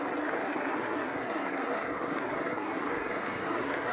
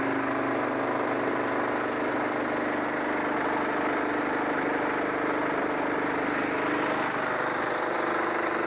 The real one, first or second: second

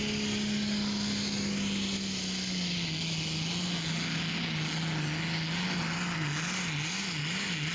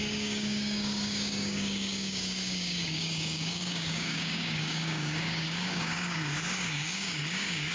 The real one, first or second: first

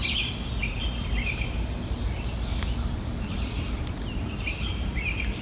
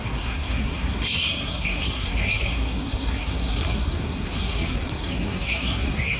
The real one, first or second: first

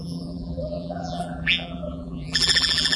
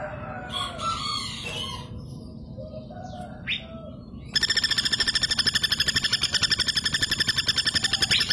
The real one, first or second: second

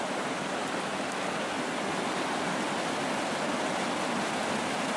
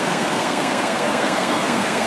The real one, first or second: first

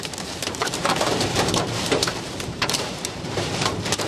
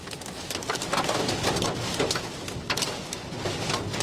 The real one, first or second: second